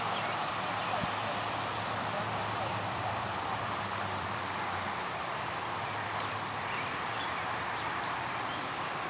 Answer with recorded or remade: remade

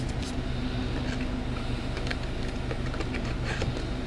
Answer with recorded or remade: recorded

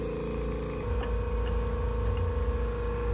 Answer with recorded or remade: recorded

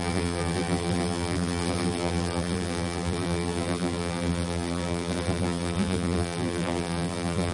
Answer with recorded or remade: remade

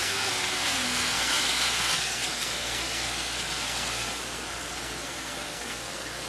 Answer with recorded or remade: remade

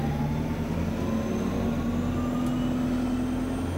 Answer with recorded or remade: recorded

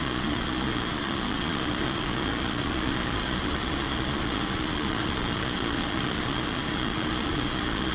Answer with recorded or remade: remade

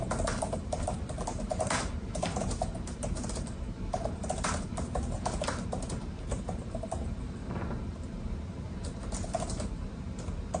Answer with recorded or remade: remade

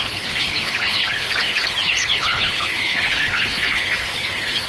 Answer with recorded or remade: remade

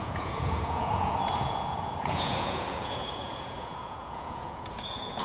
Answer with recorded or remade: remade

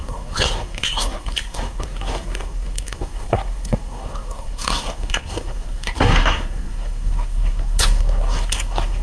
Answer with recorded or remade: remade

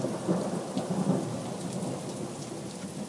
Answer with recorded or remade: recorded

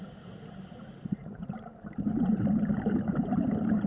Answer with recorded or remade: remade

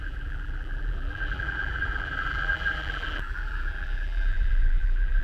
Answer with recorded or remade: remade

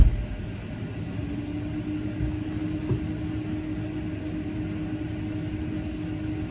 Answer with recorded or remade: recorded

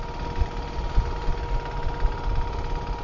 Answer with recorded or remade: recorded